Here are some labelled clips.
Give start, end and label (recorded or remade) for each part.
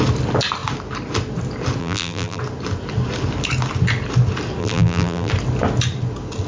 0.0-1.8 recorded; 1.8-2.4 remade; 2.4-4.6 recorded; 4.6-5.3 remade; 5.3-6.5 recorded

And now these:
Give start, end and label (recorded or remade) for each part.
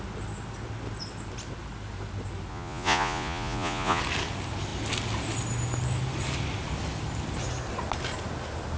0.0-2.5 recorded; 2.5-4.0 remade; 4.0-8.8 recorded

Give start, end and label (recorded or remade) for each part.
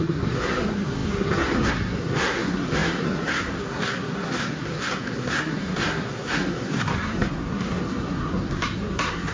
0.0-9.3 remade